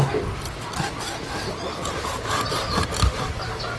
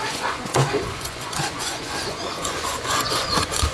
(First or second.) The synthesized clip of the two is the second